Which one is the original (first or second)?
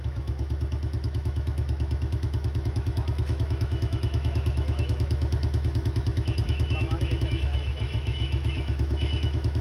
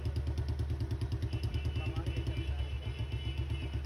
second